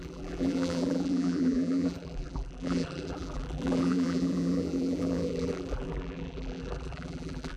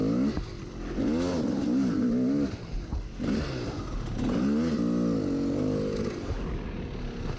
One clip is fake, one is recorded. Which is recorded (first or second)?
second